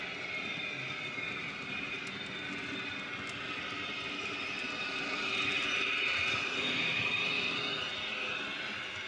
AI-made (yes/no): no